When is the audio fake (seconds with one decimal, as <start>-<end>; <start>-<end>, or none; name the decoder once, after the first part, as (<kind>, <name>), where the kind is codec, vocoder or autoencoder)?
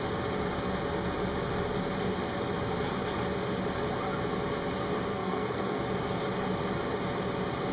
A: 5.1-5.8 (codec, SNAC)